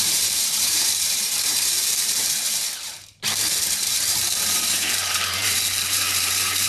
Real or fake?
fake